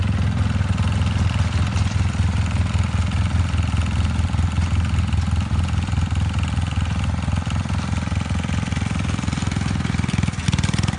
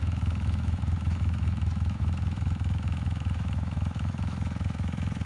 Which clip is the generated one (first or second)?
second